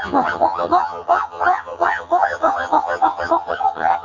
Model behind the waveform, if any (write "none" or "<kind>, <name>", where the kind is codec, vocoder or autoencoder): vocoder, HiFi-GAN